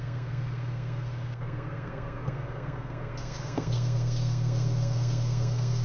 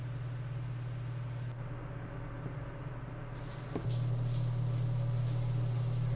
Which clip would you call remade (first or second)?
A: first